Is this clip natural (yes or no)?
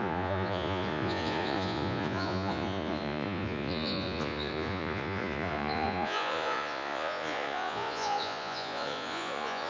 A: no